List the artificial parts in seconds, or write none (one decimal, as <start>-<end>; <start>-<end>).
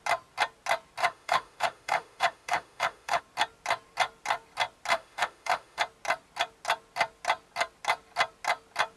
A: 1.0-3.2; 4.9-5.8